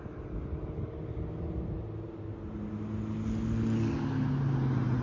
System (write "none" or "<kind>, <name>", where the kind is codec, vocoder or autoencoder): none